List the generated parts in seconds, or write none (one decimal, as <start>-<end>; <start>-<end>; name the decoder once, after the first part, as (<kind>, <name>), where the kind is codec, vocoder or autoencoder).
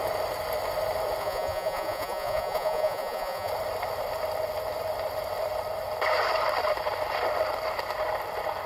1.2-3.5 (vocoder, Vocos)